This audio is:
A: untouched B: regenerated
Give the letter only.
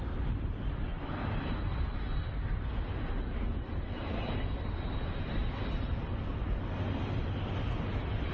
A